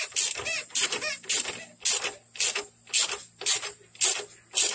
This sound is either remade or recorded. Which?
recorded